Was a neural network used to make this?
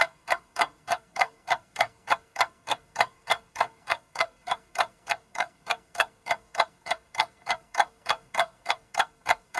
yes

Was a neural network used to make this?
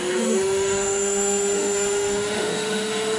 yes